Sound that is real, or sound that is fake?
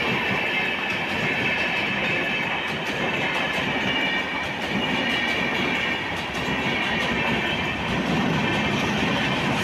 real